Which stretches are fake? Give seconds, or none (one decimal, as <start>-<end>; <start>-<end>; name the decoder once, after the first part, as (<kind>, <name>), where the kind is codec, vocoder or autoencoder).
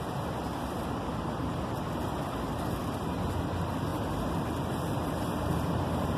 none